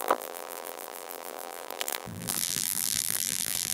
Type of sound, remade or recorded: remade